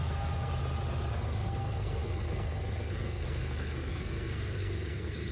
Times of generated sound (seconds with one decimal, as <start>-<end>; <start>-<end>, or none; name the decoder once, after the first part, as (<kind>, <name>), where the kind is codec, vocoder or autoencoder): 0.0-0.5 (codec, SNAC); 1.1-5.3